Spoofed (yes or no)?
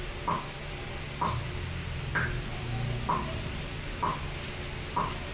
no